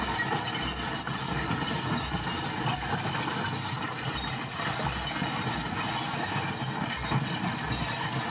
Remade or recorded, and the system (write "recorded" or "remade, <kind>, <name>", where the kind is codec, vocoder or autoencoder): recorded